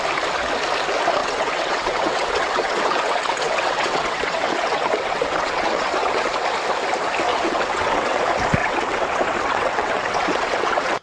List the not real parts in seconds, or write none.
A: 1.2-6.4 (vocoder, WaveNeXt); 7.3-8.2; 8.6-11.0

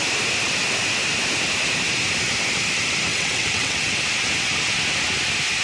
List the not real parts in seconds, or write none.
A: 3.1-3.9 (vocoder, WaveNeXt)

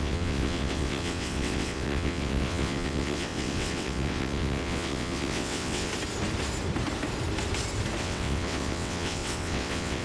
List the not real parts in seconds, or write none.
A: 0.0-5.9 (vocoder, WaveNeXt); 8.0-10.0